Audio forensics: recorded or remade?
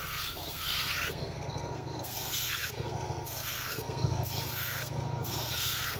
remade